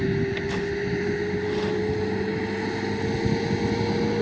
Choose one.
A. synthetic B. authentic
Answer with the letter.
B